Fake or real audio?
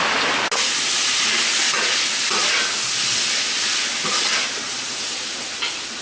real